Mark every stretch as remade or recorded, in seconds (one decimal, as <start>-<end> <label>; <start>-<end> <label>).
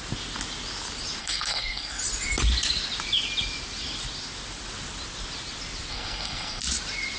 0.0-1.2 recorded; 1.2-2.0 remade; 2.0-5.9 recorded; 5.9-6.6 remade; 6.6-7.2 recorded